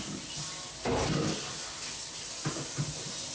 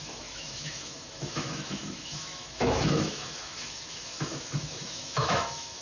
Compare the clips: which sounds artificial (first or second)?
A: second